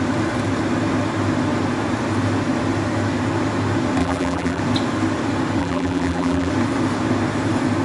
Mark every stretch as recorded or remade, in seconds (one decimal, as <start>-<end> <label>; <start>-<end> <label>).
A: 0.0-4.0 recorded; 4.0-4.6 remade; 4.6-5.6 recorded; 5.6-6.5 remade; 6.5-7.8 recorded